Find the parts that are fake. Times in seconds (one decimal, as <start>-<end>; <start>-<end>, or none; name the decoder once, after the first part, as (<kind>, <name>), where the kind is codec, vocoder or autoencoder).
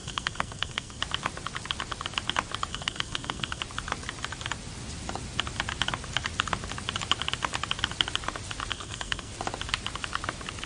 0.0-1.0 (codec, SNAC); 2.7-3.6; 8.7-9.3